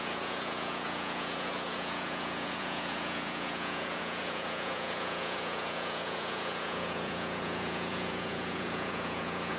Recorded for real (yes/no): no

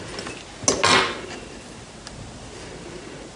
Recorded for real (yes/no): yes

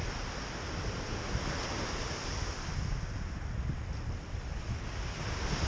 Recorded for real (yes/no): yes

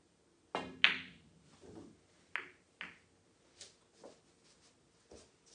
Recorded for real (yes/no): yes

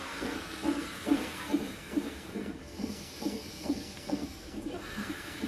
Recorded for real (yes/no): no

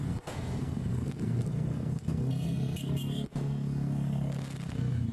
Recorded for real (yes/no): no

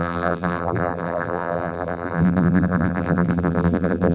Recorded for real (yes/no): no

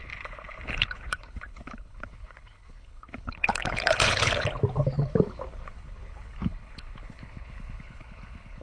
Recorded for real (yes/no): no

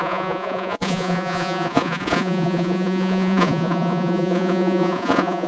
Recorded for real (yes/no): no